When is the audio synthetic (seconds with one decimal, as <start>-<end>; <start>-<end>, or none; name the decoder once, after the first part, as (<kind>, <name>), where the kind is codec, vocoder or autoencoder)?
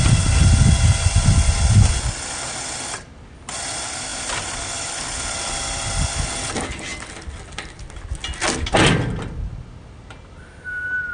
4.1-6.0 (vocoder, BigVGAN v2)